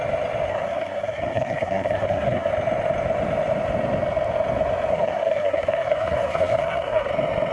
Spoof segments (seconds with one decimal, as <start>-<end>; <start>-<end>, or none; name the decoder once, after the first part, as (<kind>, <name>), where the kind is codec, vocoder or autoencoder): 0.5-2.5 (codec, SNAC); 4.9-7.1